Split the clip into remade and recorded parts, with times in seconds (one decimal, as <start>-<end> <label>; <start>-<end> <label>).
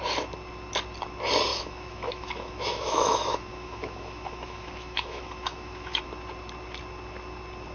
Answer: 0.0-1.5 recorded; 1.5-6.0 remade; 6.0-7.7 recorded